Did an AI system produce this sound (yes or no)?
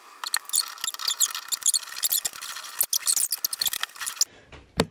no